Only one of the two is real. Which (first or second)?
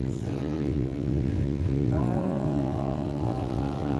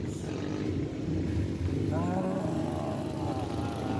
second